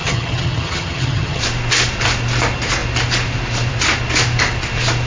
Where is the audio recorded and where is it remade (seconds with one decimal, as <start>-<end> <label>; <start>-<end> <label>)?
0.0-1.4 remade; 1.4-5.1 recorded